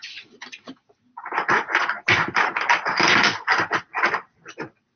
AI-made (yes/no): no